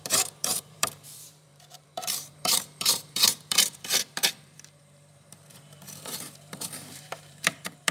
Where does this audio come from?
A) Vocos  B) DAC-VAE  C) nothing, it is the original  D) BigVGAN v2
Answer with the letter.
D